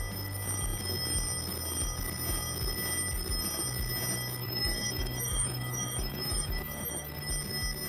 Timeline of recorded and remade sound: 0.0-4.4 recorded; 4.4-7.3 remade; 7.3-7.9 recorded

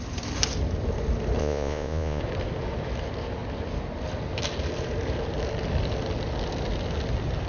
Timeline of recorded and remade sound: 0.0-1.4 recorded; 1.4-2.2 remade; 2.2-7.5 recorded

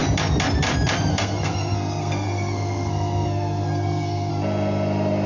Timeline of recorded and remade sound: 0.0-1.1 recorded; 1.1-4.3 remade; 4.3-5.3 recorded

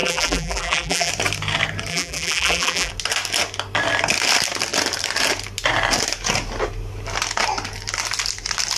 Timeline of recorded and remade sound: 0.0-1.1 remade; 1.1-1.9 recorded; 1.9-2.9 remade; 2.9-8.8 recorded

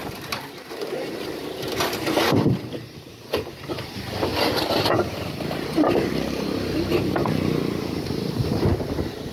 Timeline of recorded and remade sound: 0.0-7.2 remade; 7.2-8.0 recorded; 8.0-8.7 remade; 8.7-9.3 recorded

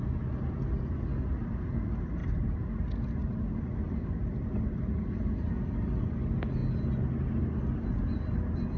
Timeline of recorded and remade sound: 0.0-8.8 recorded